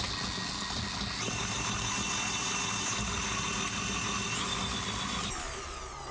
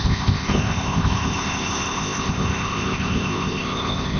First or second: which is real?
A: first